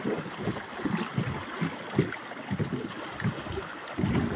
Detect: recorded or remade recorded